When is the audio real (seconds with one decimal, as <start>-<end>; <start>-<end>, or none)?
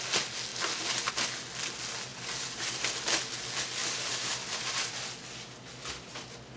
0.0-0.5; 1.1-2.1; 3.1-3.8; 4.9-6.6